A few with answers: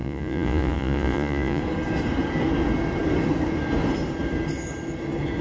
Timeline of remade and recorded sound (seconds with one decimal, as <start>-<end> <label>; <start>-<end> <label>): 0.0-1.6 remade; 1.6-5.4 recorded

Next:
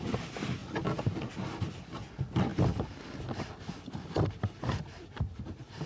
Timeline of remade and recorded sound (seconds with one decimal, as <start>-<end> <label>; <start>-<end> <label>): 0.0-5.9 recorded

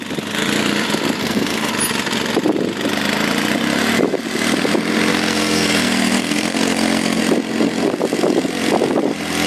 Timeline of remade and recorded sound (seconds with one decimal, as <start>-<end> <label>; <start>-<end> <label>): 0.0-1.2 recorded; 1.2-1.7 remade; 1.7-5.1 recorded; 5.1-7.2 remade; 7.2-9.5 recorded

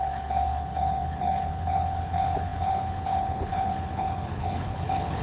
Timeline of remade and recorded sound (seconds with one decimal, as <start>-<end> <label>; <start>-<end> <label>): 0.0-5.2 remade

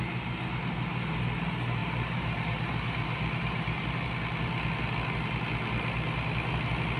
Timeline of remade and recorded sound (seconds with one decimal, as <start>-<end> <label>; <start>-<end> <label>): 0.0-1.8 recorded; 1.8-3.8 remade; 3.8-7.0 recorded